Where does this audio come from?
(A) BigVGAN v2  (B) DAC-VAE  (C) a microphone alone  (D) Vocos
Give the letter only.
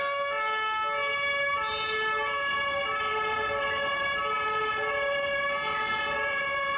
C